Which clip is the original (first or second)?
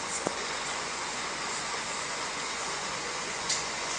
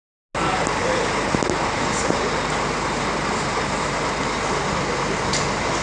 second